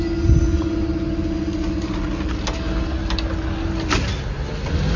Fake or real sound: real